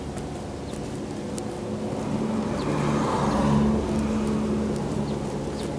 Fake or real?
real